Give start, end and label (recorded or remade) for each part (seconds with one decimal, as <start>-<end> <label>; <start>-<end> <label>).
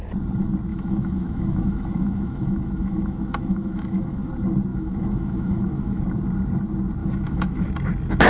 0.0-0.7 recorded; 0.7-4.3 remade; 4.3-4.7 recorded; 4.7-6.0 remade; 6.0-7.0 recorded; 7.0-7.7 remade; 7.7-8.3 recorded